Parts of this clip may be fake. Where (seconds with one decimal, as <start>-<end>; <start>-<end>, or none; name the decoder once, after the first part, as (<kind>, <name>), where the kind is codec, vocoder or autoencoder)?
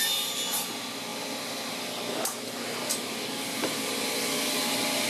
0.0-0.6 (vocoder, BigVGAN v2)